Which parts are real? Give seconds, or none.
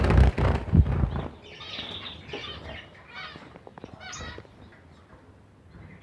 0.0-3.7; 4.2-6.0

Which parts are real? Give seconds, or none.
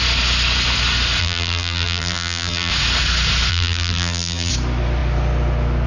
0.0-1.2; 2.7-3.5; 4.5-5.9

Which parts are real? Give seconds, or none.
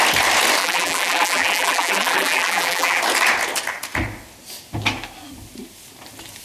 0.0-0.6; 3.0-6.4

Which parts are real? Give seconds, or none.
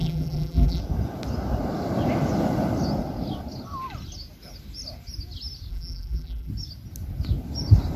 0.8-5.7; 6.5-8.0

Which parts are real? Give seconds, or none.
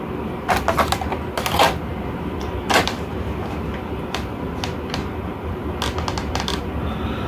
0.0-1.9; 3.1-7.3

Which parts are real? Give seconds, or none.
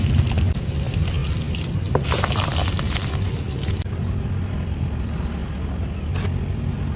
5.4-7.0